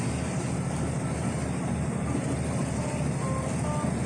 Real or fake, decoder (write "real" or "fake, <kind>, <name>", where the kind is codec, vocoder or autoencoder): real